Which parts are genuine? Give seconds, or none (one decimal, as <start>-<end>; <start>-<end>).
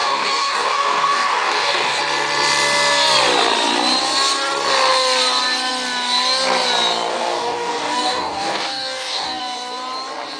2.0-7.1; 9.4-10.4